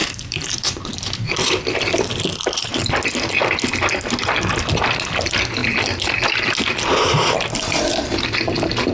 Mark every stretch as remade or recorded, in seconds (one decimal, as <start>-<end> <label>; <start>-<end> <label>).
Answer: 0.0-0.7 remade; 0.7-8.9 recorded